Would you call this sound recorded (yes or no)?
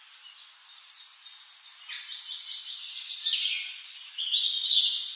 yes